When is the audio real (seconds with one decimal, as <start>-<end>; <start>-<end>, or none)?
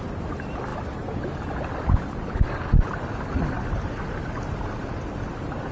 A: 0.0-5.7